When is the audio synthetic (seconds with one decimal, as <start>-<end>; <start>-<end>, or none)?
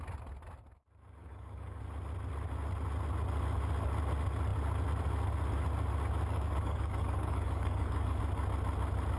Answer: 1.2-1.8; 6.3-8.2